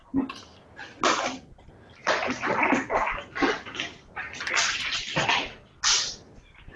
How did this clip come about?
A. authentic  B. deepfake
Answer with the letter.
A